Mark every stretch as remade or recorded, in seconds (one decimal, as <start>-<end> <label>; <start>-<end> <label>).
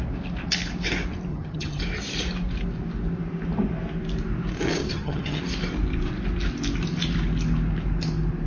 0.0-1.3 recorded; 1.3-1.8 remade; 1.8-4.8 recorded; 4.8-5.4 remade; 5.4-8.5 recorded